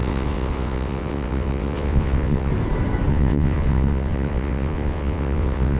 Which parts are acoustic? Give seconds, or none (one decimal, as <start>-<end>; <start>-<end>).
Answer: 2.5-3.1